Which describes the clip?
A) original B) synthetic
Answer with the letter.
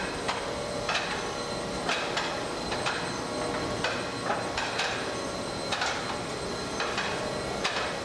A